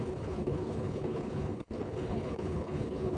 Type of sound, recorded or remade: remade